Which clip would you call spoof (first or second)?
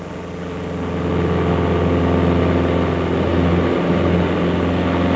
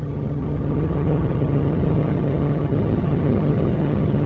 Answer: second